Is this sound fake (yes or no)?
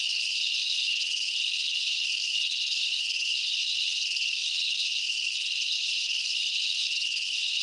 yes